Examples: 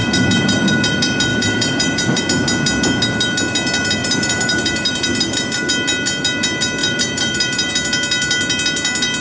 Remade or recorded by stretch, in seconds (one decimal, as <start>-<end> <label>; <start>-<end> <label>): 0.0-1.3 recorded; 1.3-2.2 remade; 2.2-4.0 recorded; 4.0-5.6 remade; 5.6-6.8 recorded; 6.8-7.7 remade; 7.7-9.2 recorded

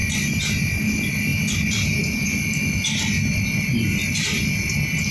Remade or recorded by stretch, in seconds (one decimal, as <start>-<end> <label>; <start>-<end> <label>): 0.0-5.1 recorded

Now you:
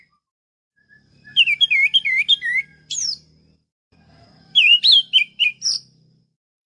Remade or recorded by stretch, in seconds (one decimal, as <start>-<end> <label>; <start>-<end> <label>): 0.0-6.7 remade